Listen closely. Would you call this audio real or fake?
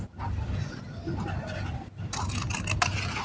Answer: real